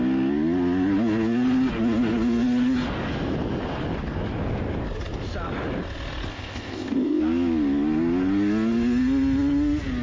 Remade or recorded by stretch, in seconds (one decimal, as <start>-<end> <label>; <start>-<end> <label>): 0.0-6.3 recorded; 6.3-7.2 remade; 7.2-10.0 recorded